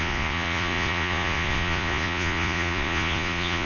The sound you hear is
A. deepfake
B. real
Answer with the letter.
A